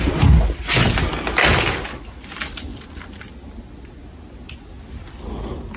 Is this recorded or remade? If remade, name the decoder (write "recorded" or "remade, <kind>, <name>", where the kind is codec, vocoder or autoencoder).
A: recorded